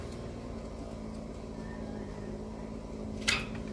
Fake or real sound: real